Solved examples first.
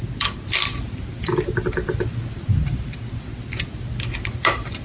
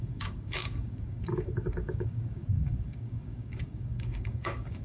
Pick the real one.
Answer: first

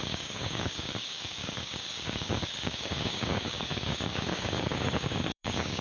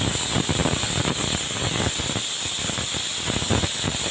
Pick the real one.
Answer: second